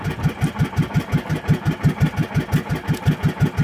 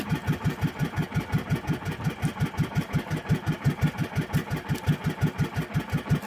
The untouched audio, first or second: first